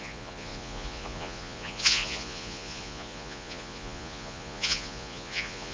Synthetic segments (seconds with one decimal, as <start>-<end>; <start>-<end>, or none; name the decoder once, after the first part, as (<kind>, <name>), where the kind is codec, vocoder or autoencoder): 0.0-5.7 (vocoder, Vocos)